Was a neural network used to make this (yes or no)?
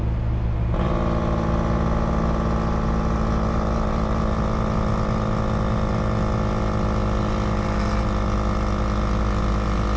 no